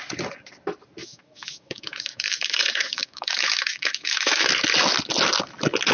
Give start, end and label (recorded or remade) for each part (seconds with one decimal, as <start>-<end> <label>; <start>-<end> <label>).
0.0-1.0 recorded; 1.0-4.5 remade; 4.5-5.9 recorded

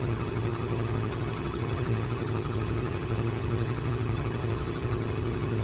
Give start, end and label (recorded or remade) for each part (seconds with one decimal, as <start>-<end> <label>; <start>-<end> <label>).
0.0-5.6 remade